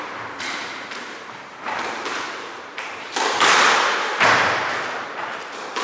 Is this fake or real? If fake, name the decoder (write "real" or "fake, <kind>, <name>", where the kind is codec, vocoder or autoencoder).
fake, vocoder, BigVGAN v2